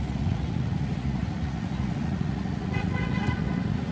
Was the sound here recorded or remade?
remade